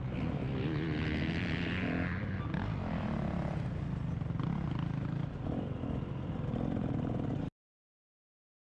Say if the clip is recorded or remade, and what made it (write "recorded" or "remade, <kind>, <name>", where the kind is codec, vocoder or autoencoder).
recorded